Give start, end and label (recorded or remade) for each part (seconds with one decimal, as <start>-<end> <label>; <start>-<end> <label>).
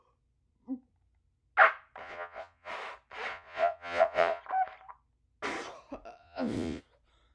0.0-2.0 recorded; 2.0-2.7 remade; 2.7-3.3 recorded; 3.3-4.4 remade; 4.4-6.2 recorded; 6.2-6.8 remade; 6.8-7.3 recorded